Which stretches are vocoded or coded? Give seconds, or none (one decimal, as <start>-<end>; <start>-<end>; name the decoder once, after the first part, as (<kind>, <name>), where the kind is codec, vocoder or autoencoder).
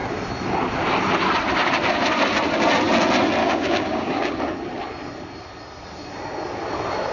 3.4-4.4 (codec, DAC)